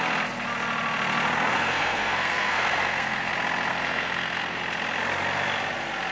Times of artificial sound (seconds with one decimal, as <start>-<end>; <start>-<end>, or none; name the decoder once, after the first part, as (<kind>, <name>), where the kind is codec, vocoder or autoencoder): 1.5-3.3 (codec, SNAC); 3.7-4.6

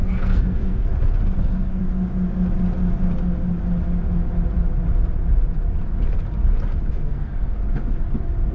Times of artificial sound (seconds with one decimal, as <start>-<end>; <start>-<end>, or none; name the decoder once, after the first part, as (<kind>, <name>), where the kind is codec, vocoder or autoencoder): 0.0-0.9 (codec, SNAC); 1.4-1.8; 6.9-7.6